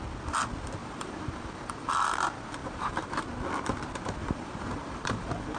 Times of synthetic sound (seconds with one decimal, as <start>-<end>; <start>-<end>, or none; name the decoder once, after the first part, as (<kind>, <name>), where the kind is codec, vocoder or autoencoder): 0.8-2.1 (vocoder, BigVGAN v2); 2.6-3.2; 4.2-5.6